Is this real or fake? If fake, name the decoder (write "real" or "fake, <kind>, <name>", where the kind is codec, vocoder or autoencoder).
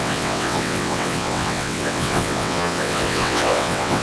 fake, vocoder, WaveNeXt